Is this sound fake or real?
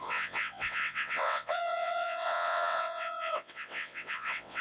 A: fake